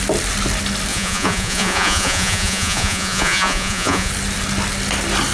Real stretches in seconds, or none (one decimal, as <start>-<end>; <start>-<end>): 0.0-0.9; 4.1-5.3